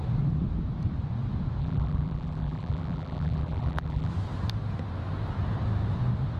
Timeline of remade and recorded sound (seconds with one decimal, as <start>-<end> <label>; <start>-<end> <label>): 0.0-1.6 recorded; 1.6-4.1 remade; 4.1-6.4 recorded